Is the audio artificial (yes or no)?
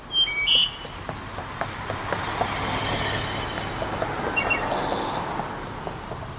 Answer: no